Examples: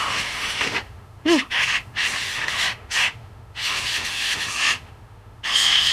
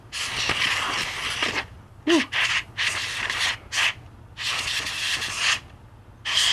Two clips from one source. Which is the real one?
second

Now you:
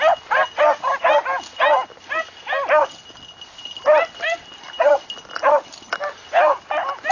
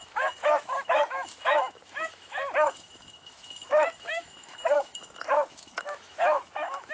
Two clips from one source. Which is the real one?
first